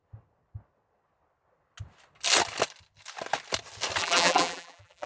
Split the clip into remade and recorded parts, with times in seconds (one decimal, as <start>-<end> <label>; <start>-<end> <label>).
0.0-4.0 recorded; 4.0-5.1 remade